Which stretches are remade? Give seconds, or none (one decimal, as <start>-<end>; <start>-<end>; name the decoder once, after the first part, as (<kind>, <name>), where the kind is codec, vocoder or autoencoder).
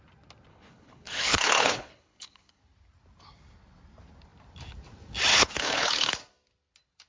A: 0.5-2.6 (codec, HILCodec); 5.3-6.1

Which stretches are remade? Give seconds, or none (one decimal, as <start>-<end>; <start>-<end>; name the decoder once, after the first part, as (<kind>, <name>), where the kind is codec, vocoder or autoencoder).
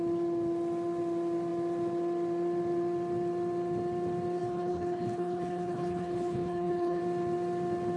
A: 4.4-7.0 (codec, HILCodec)